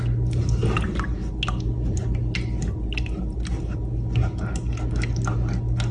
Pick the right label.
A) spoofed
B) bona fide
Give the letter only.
B